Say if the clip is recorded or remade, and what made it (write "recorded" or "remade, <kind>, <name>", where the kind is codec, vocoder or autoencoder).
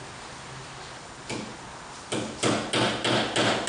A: recorded